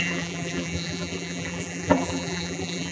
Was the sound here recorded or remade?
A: remade